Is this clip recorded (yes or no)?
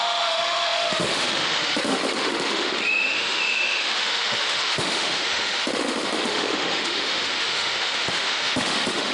no